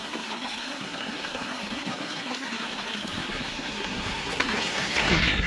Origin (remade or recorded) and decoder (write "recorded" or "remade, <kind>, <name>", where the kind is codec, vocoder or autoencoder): remade, codec, SNAC